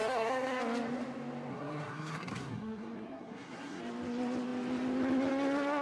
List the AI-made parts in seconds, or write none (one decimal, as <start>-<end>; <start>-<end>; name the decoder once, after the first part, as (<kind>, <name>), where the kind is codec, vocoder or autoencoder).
0.0-0.6 (codec, SNAC); 1.5-3.8